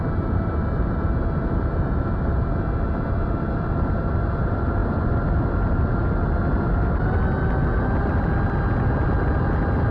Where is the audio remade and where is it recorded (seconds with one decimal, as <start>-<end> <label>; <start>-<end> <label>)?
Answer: 0.0-9.9 recorded